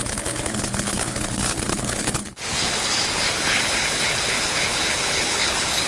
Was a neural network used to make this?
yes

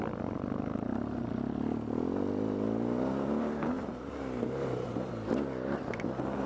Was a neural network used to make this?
no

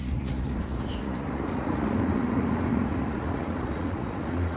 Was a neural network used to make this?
yes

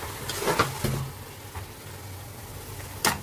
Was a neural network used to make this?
no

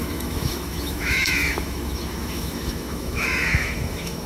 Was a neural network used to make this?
yes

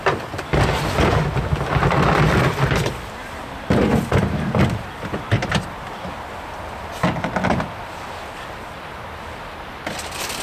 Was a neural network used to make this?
no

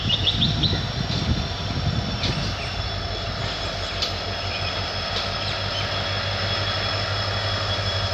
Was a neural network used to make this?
no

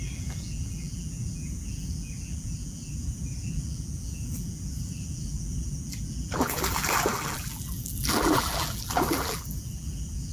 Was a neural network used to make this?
yes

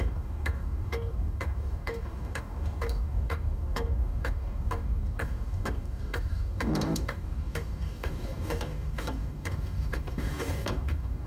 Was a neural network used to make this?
yes